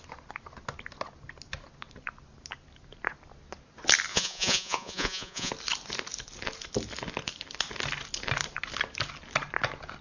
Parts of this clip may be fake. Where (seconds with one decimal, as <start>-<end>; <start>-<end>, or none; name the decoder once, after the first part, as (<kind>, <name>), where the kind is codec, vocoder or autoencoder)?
4.1-5.5 (vocoder, Vocos)